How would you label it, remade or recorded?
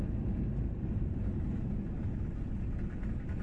recorded